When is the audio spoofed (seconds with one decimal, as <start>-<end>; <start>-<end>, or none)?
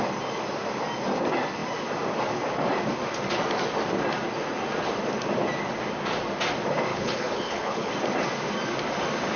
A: 6.9-7.9